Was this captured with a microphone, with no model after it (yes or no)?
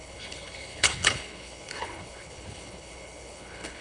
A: no